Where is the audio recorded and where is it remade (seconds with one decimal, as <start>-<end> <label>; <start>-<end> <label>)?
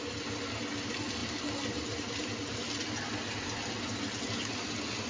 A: 0.0-5.1 recorded